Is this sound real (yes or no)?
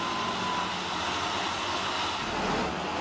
yes